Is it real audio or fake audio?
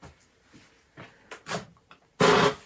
real